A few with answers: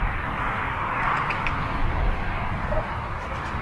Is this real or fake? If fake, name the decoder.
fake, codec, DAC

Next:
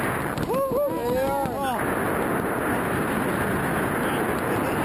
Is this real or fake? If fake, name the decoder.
real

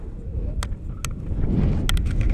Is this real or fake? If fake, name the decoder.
real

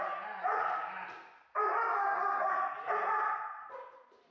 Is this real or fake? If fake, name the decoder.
real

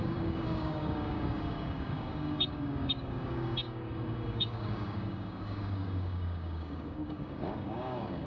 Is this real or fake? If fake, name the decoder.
fake, codec, DAC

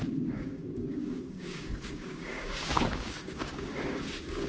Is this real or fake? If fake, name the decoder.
fake, codec, DAC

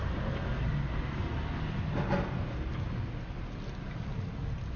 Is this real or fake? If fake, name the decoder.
real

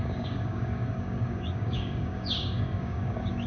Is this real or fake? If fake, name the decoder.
fake, codec, DAC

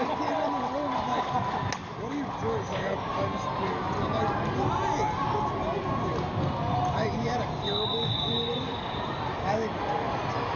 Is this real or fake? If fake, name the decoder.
real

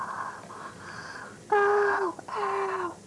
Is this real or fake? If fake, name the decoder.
real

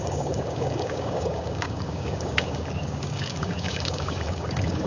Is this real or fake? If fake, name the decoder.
fake, codec, DAC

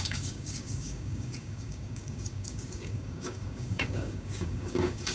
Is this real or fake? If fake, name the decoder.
fake, codec, DAC